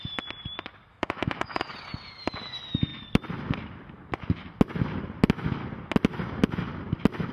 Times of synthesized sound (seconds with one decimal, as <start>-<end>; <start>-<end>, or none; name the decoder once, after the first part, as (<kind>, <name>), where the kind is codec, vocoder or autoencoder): 0.9-1.7 (autoencoder, DAC-VAE)